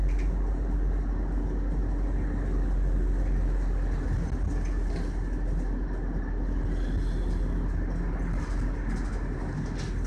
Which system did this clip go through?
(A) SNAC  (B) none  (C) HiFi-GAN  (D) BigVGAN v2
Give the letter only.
B